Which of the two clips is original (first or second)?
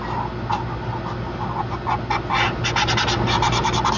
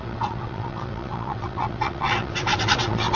first